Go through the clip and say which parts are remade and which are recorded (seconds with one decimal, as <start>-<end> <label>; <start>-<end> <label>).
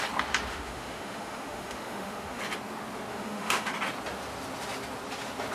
0.0-0.5 recorded; 0.5-2.4 remade; 2.4-3.1 recorded; 3.1-3.7 remade; 3.7-5.5 recorded